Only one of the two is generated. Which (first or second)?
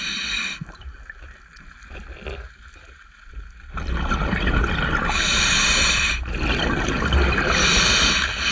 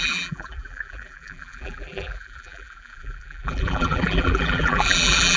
second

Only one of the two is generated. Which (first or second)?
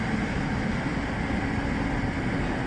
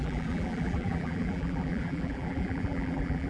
second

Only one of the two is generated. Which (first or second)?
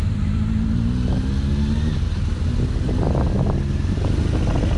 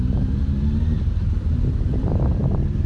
second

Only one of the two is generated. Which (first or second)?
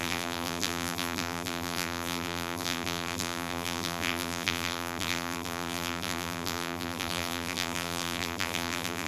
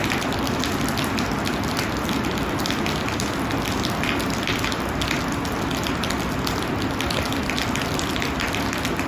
first